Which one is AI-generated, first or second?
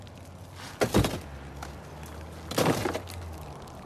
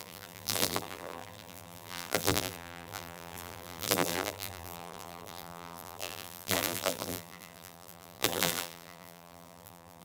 second